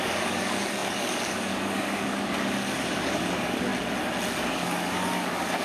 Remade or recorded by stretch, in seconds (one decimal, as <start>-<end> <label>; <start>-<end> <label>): 0.0-3.7 remade; 3.7-4.4 recorded; 4.4-5.6 remade

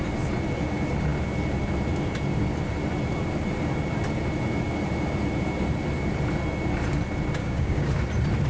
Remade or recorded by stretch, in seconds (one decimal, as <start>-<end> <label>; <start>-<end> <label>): 0.0-7.4 recorded; 7.4-7.9 remade; 7.9-8.5 recorded

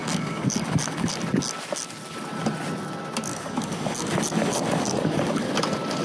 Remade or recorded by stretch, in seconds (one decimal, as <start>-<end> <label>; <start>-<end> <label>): 0.0-1.1 remade; 1.1-3.3 recorded; 3.3-5.5 remade; 5.5-6.0 recorded

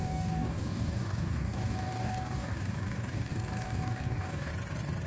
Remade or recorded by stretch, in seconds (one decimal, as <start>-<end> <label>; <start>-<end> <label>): 0.0-4.5 remade; 4.5-5.1 recorded